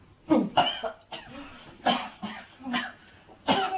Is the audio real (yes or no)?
yes